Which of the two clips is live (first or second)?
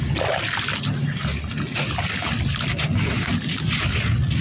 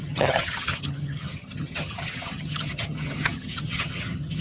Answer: first